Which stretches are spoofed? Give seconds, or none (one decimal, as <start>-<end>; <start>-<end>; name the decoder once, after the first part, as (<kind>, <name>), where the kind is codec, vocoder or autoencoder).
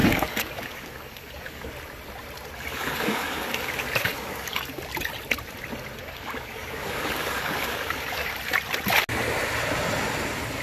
0.0-1.7 (codec, DAC); 2.7-4.8; 6.0-8.3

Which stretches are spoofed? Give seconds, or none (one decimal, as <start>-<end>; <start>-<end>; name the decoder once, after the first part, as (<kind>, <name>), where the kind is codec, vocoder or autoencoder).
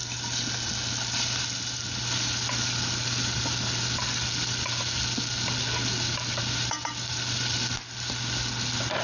none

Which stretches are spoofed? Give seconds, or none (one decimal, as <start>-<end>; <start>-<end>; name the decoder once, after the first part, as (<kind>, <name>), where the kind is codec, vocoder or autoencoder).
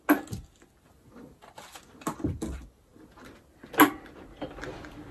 none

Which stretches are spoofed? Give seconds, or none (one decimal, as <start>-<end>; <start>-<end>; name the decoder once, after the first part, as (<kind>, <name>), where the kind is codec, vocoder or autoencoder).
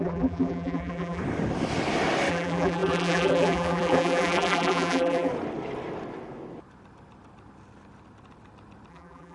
0.0-1.2 (vocoder, BigVGAN v2); 2.3-5.3; 8.9-9.3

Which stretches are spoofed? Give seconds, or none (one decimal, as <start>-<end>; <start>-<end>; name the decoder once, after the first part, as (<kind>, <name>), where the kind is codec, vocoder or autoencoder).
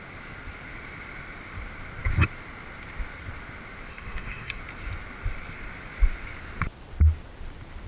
3.9-4.6 (codec, DAC)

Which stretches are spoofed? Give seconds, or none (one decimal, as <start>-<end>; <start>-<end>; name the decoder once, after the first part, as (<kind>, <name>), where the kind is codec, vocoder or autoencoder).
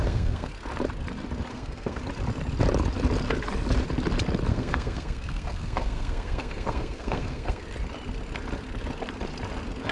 0.0-0.5 (codec, SNAC); 1.5-2.0; 4.5-7.6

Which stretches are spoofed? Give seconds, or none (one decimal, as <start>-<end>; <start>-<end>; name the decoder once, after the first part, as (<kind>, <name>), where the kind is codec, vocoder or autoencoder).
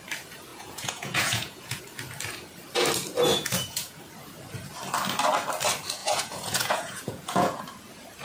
0.5-1.8 (vocoder, Vocos); 3.3-4.0; 6.0-7.6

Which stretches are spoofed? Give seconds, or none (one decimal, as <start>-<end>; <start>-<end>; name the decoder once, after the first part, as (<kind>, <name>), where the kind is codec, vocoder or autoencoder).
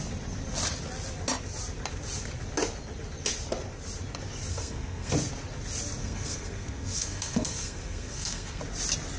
4.5-5.1 (codec, SNAC); 6.0-8.6